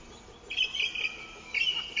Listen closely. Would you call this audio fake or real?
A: real